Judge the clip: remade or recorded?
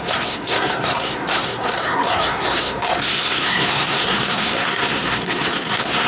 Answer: remade